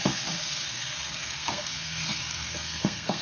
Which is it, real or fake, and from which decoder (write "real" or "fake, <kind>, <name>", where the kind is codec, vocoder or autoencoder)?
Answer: fake, codec, SNAC